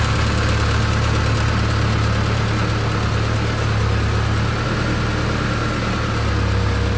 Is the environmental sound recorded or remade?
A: recorded